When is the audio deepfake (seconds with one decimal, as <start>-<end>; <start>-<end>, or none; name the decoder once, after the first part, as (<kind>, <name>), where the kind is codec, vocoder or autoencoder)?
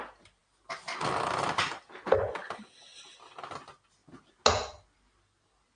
none